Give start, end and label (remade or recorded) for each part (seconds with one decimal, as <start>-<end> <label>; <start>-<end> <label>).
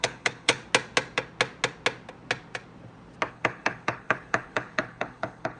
0.0-0.6 remade; 0.6-3.3 recorded; 3.3-5.6 remade